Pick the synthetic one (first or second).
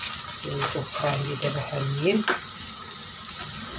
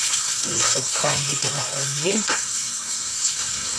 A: second